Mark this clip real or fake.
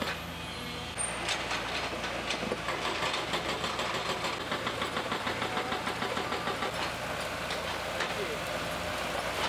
real